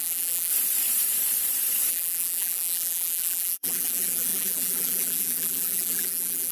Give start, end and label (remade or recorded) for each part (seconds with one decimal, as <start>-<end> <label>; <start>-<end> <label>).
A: 0.0-0.5 remade; 0.5-1.9 recorded; 1.9-6.5 remade